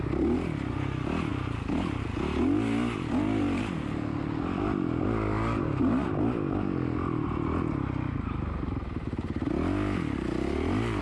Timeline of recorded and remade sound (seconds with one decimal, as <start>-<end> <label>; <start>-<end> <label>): 0.0-11.0 recorded